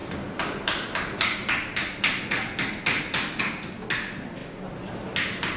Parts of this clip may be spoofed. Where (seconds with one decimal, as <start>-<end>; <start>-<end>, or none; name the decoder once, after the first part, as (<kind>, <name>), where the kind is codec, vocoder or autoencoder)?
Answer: none